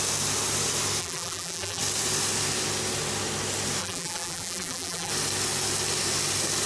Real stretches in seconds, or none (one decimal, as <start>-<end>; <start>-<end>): 0.0-1.0; 1.8-3.8; 5.1-6.7